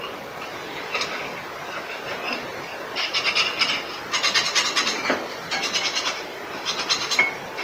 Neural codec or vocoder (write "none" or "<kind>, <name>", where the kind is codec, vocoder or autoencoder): none